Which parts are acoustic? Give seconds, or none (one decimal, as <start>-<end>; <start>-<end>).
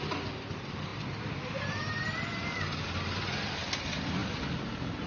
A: 0.0-5.1